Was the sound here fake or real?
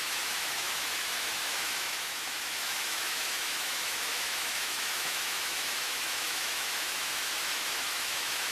fake